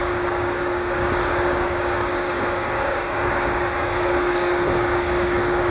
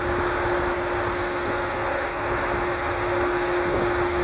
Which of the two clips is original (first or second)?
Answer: second